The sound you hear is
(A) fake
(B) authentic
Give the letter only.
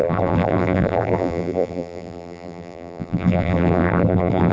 A